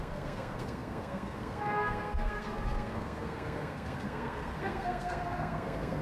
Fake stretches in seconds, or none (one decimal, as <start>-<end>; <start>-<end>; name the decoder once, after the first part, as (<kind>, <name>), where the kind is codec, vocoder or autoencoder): 0.0-6.0 (codec, SNAC)